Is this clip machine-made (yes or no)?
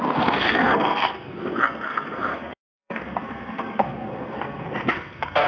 yes